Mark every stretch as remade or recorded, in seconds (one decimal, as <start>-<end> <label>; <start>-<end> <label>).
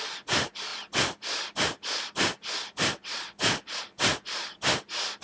0.0-5.2 recorded